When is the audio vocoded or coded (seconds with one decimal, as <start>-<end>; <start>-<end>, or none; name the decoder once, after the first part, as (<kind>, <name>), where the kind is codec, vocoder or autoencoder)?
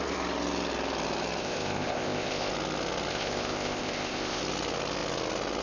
1.4-2.5 (codec, ZipCodec); 3.1-4.4